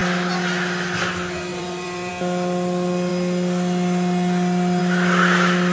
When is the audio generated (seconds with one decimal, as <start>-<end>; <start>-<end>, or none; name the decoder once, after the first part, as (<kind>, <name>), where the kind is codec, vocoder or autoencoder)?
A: 1.5-2.1 (vocoder, BigVGAN v2)